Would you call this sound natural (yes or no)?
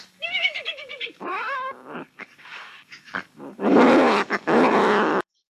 no